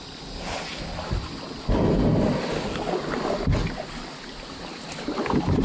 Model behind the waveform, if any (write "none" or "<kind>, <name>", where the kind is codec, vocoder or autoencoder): none